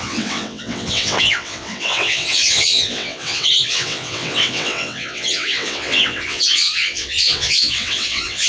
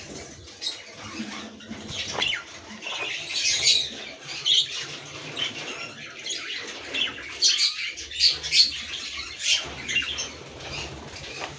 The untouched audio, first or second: second